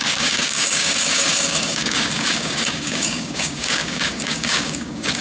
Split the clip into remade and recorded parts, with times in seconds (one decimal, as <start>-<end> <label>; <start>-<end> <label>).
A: 0.0-5.2 remade